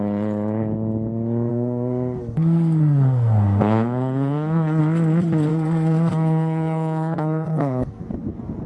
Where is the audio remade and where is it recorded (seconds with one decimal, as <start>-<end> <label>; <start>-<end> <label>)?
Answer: 0.0-1.5 recorded; 1.5-4.8 remade; 4.8-5.5 recorded; 5.5-8.0 remade; 8.0-8.7 recorded